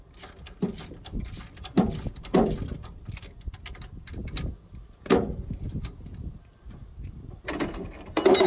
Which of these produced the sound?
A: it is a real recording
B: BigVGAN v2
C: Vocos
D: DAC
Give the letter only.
A